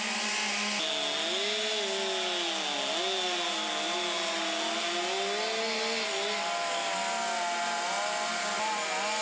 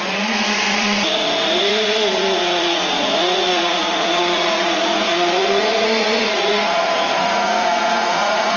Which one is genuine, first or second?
first